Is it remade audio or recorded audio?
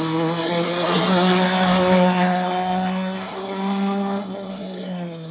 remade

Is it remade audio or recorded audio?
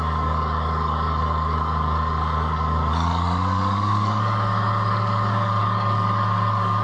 remade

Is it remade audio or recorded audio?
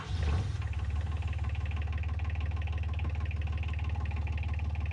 recorded